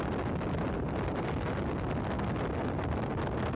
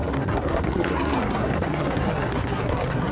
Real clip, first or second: first